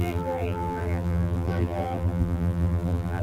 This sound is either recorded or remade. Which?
remade